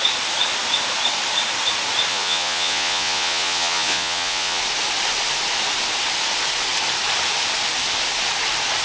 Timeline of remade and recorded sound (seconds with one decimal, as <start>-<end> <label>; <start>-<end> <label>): 0.0-2.1 recorded; 2.1-4.6 remade; 4.6-8.8 recorded